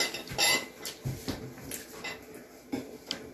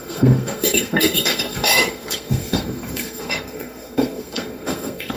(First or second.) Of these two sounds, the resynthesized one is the second